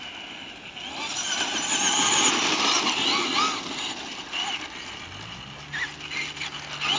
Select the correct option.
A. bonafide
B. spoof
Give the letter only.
A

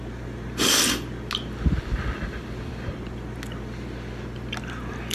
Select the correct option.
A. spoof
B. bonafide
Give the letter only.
B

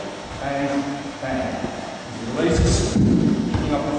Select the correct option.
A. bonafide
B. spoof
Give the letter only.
A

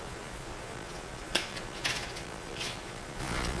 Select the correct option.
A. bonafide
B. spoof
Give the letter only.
B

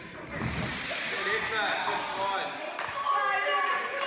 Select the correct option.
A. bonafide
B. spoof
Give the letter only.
A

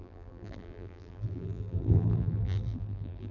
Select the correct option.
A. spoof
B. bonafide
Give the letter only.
A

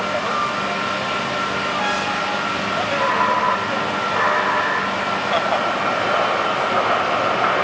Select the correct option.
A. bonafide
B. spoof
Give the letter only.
A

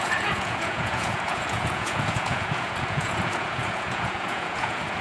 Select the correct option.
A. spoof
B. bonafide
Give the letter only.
A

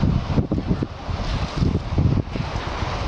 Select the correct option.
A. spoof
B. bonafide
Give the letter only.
B